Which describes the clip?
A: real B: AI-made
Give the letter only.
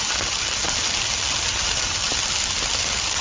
A